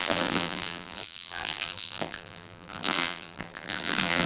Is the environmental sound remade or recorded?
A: remade